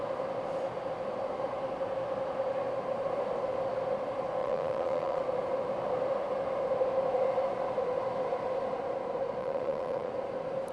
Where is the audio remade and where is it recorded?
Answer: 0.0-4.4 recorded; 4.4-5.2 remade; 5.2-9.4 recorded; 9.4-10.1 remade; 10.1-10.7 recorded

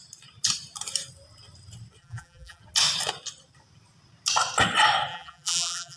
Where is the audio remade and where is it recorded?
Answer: 0.0-2.0 recorded; 2.0-2.6 remade; 2.6-5.1 recorded; 5.1-6.0 remade

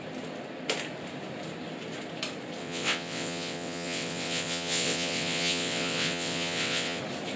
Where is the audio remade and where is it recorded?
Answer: 0.0-2.6 recorded; 2.6-7.0 remade; 7.0-7.4 recorded

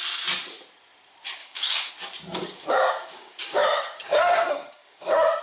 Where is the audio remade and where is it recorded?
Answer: 0.0-1.4 recorded; 1.4-1.9 remade; 1.9-2.3 recorded; 2.3-5.4 remade

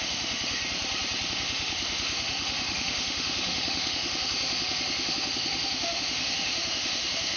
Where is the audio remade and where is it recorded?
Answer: 0.0-0.6 remade; 0.6-1.3 recorded; 1.3-7.4 remade

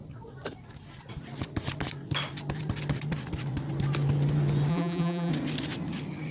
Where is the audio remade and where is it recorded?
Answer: 0.0-4.7 recorded; 4.7-5.3 remade; 5.3-6.3 recorded

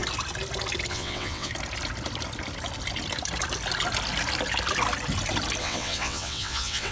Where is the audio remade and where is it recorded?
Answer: 0.0-0.9 recorded; 0.9-1.5 remade; 1.5-5.6 recorded; 5.6-6.9 remade